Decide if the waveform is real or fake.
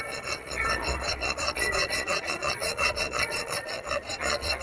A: fake